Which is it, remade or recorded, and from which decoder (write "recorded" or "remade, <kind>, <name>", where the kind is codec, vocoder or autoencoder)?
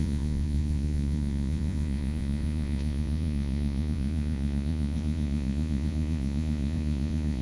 remade, vocoder, Vocos